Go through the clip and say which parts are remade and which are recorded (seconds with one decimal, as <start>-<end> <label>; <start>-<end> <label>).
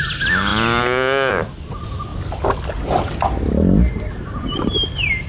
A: 0.0-5.3 recorded